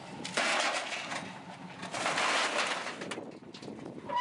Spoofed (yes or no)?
no